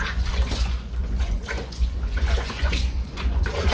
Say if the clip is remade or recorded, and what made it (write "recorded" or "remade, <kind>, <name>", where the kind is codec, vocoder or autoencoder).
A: remade, vocoder, Vocos